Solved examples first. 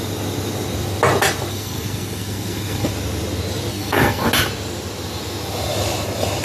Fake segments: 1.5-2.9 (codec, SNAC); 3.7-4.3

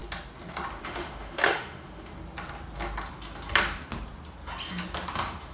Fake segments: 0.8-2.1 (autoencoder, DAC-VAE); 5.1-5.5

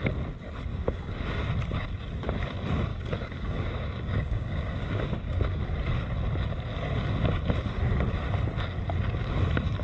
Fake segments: 0.7-1.5 (codec, DAC); 2.9-5.6

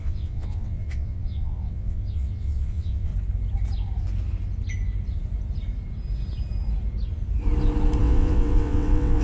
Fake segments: 0.0-3.1 (vocoder, WaveNeXt); 8.0-9.2

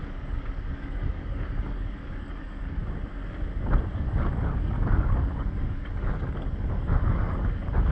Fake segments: 0.0-2.8 (codec, DAC); 3.9-7.9

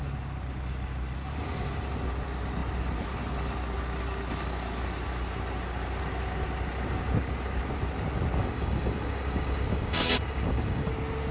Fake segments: 8.4-10.9 (codec, DAC)

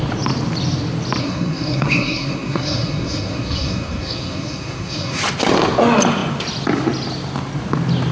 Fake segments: 1.2-5.2 (codec, SNAC)

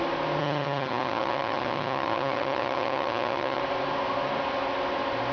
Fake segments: 0.4-3.6 (vocoder, HiFi-GAN)